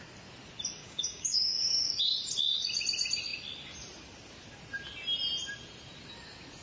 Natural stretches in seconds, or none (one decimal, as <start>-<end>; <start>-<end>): 0.0-0.8; 2.0-6.6